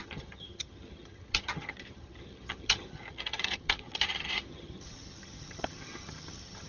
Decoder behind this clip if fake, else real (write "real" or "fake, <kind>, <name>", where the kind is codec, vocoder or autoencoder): fake, vocoder, HiFi-GAN